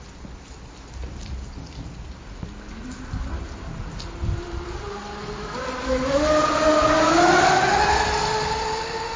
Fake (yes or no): no